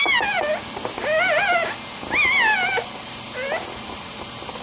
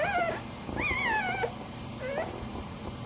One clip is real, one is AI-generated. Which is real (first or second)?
first